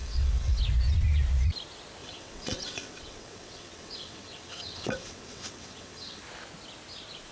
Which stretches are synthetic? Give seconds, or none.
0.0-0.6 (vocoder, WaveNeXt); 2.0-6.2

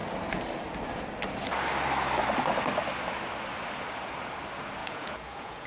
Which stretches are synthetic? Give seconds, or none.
4.8-5.7 (vocoder, Vocos)